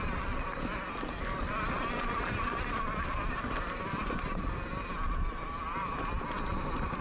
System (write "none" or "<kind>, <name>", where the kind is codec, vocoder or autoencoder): none